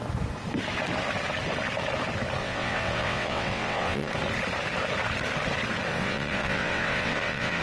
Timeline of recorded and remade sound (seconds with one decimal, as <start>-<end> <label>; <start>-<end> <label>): 0.0-2.4 recorded; 2.4-4.1 remade; 4.1-5.9 recorded; 5.9-7.6 remade